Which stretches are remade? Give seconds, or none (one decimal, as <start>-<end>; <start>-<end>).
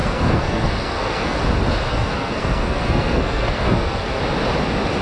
0.0-1.4; 1.9-4.2